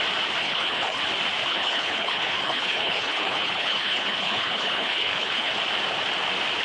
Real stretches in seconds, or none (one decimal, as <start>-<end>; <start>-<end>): 0.0-0.4; 1.0-1.5; 5.5-6.6